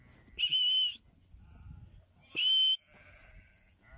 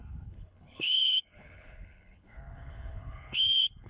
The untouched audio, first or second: first